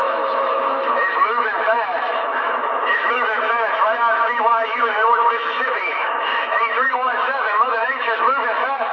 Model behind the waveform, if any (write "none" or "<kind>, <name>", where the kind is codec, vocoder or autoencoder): autoencoder, DAC-VAE